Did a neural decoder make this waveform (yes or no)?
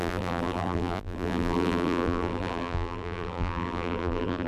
yes